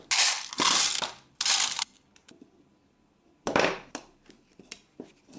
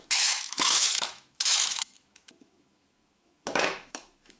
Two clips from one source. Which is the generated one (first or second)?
second